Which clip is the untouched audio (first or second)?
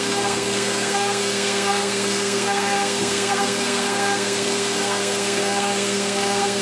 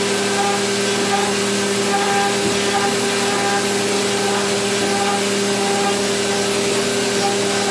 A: second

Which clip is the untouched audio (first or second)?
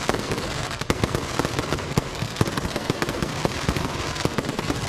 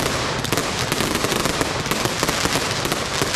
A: second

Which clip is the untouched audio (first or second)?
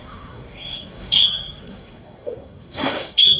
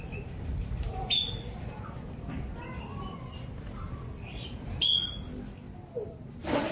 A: second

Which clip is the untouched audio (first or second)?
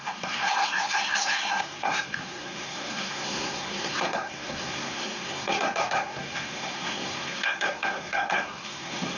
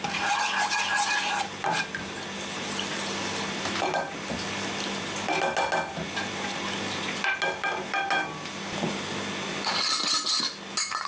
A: second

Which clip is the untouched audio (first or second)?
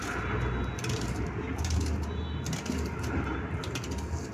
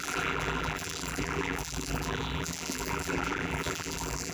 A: first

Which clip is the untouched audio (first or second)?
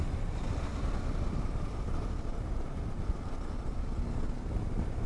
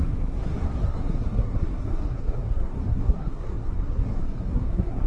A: first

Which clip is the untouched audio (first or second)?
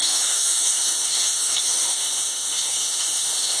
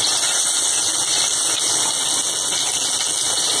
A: second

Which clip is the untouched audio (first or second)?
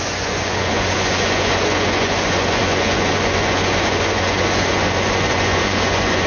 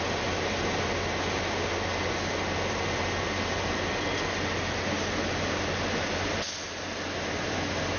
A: second